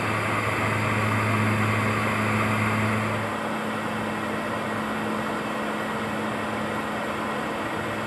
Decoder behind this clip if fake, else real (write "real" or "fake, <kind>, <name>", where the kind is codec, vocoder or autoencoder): real